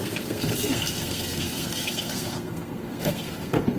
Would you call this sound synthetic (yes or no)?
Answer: yes